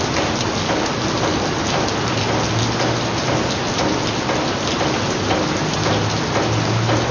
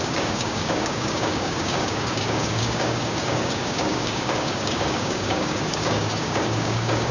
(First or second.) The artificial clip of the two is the second